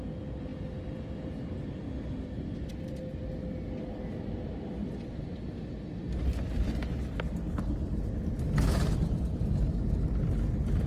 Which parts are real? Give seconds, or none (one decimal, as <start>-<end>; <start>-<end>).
0.0-10.9